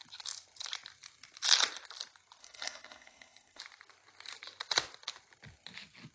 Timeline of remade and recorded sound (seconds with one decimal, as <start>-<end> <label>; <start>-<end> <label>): 0.0-2.4 recorded; 2.4-3.6 remade; 3.6-6.1 recorded